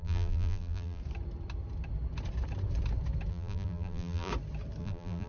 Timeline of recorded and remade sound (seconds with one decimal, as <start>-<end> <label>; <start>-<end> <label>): 0.0-1.0 remade; 1.0-3.3 recorded; 3.3-4.3 remade; 4.3-4.8 recorded; 4.8-5.3 remade